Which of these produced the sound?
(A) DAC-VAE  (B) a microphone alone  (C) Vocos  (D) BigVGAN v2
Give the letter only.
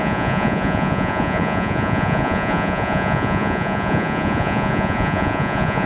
C